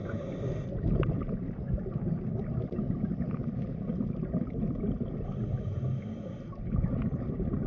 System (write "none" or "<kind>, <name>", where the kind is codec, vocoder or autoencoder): none